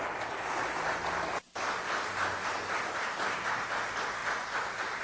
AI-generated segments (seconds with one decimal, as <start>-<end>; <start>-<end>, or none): none